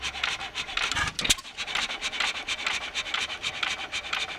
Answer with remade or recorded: recorded